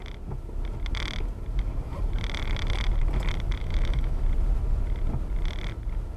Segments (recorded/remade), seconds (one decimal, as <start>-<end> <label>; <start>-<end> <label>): 0.0-3.6 recorded; 3.6-4.2 remade; 4.2-6.2 recorded